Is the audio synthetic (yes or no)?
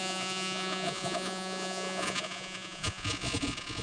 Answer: yes